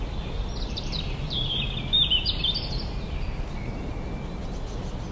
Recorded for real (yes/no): yes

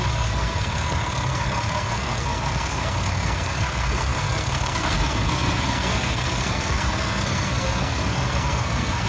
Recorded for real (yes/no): no